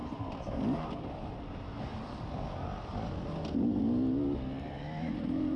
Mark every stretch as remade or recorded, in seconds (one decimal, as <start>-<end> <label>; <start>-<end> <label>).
0.0-5.6 recorded